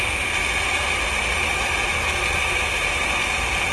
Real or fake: real